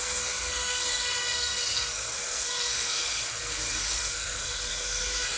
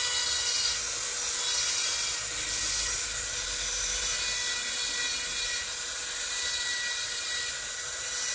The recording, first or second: second